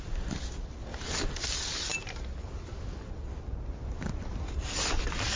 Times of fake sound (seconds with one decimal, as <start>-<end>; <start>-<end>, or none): none